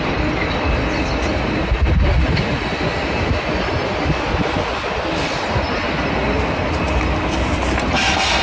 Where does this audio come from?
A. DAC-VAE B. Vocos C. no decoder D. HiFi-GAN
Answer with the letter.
C